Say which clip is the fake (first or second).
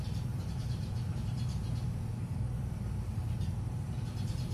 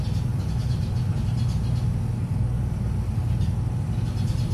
first